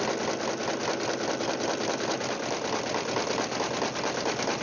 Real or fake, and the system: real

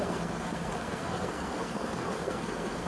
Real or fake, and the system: fake, codec, SNAC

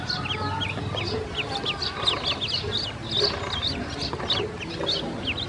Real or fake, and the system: real